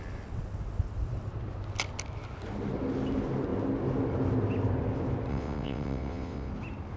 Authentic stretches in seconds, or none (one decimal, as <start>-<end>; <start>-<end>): 0.0-5.3; 6.5-7.0